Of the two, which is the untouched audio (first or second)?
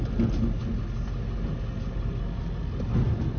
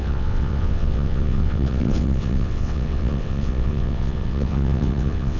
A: first